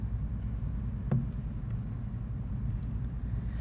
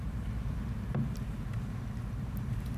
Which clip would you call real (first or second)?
first